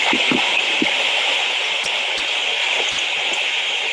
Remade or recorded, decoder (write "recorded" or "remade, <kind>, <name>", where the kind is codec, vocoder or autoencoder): recorded